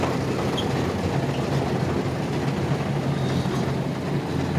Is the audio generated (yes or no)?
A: no